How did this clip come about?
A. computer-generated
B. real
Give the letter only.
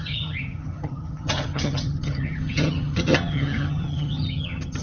A